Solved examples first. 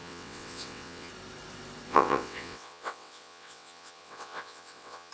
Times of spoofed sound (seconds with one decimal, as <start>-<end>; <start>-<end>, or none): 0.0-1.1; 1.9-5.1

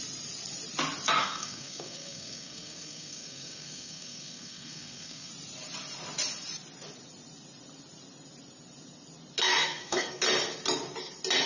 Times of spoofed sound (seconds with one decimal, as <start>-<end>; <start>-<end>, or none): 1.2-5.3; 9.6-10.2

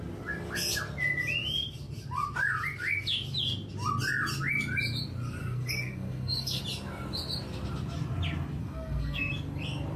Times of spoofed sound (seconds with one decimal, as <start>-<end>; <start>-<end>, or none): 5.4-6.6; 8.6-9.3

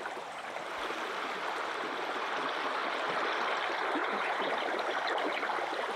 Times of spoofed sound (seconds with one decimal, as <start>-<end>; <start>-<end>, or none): 4.0-4.5